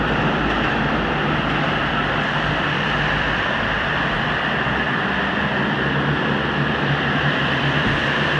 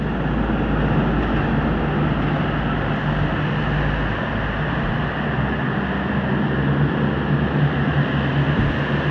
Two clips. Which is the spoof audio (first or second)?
first